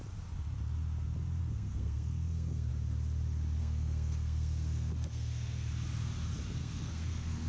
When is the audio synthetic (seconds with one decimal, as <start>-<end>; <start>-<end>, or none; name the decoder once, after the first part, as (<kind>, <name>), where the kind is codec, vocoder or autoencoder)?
1.4-2.7 (codec, SNAC); 3.6-5.7; 6.6-7.5